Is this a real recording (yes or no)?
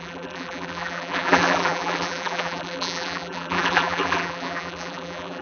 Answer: no